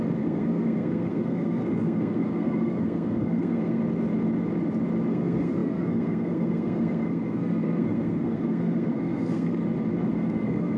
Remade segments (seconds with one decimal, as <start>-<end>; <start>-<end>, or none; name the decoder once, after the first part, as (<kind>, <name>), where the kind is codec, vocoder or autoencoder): 0.0-3.8 (codec, SNAC); 5.1-9.6; 10.1-10.8